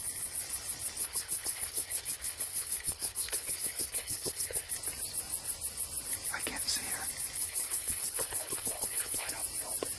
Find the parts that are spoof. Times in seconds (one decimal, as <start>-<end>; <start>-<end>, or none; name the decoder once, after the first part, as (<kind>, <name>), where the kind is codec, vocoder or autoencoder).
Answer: 1.0-4.7 (codec, HILCodec); 7.4-9.3